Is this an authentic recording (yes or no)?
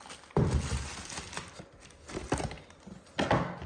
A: yes